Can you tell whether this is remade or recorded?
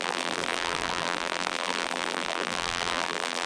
remade